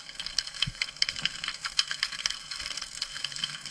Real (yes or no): no